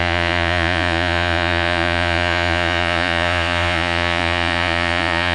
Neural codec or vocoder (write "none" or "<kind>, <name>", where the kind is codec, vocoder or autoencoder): vocoder, Vocos